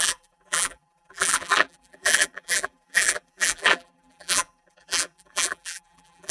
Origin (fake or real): fake